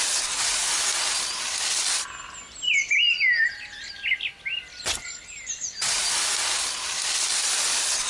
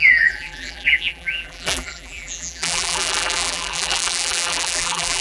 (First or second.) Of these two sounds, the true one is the first